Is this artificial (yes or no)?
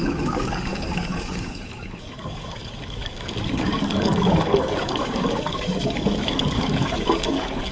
yes